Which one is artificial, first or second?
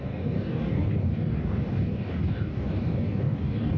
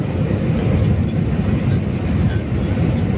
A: first